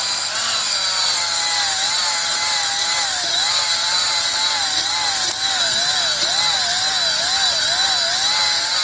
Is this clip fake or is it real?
real